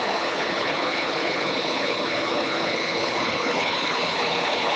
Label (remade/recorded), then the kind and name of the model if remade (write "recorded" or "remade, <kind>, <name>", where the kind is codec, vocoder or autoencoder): remade, codec, HILCodec